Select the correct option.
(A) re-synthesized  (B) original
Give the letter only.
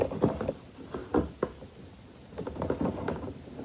B